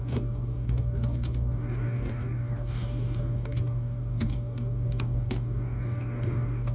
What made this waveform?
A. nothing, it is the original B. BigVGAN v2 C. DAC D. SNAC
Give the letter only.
C